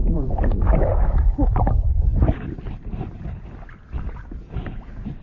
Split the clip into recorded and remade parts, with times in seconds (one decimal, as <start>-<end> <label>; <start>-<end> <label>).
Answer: 0.0-0.8 remade; 0.8-5.2 recorded